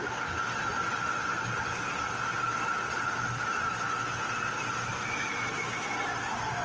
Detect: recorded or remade recorded